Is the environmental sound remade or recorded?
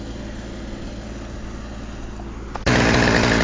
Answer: recorded